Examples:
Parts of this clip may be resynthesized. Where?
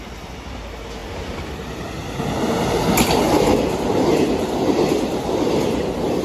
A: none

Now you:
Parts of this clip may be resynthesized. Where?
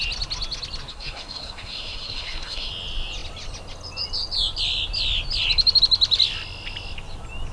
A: 0.9-2.7 (codec, SNAC)